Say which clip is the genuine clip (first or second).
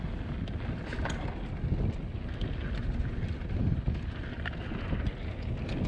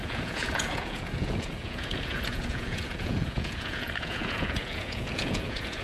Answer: first